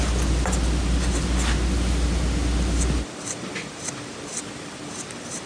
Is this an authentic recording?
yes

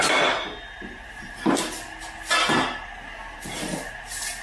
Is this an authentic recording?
yes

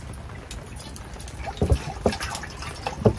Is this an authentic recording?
yes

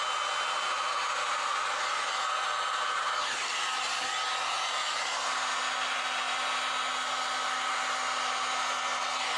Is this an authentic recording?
yes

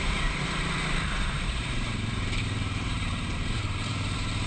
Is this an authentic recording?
no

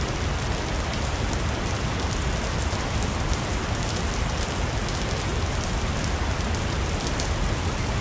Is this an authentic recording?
yes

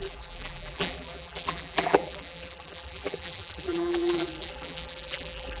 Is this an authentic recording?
no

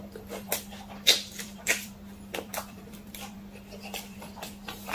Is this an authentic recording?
no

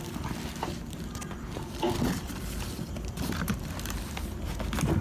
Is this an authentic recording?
no